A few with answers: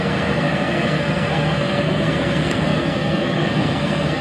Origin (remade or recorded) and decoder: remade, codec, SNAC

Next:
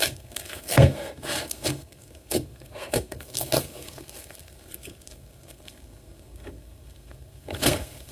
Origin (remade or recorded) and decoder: remade, codec, SNAC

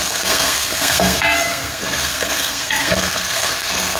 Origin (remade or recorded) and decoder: remade, codec, SNAC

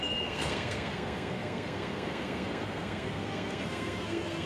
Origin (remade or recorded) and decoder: remade, codec, SNAC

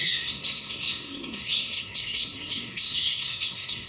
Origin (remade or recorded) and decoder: remade, codec, SNAC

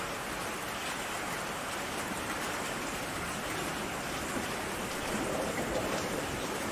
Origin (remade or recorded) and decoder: recorded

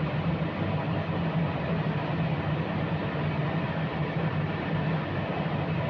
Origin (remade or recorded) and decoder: recorded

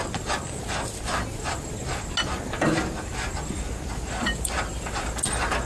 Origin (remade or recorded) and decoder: recorded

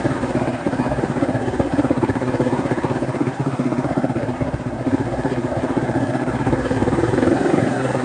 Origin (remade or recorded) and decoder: remade, codec, SNAC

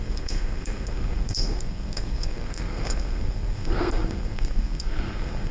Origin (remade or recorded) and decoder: remade, codec, SNAC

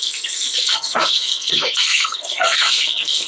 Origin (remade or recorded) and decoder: remade, codec, SNAC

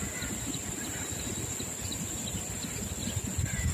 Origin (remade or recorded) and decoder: recorded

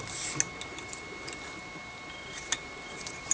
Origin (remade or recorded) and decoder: recorded